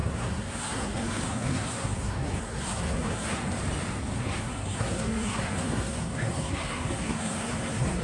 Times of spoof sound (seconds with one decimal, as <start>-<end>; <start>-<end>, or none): 0.0-3.4; 4.2-8.0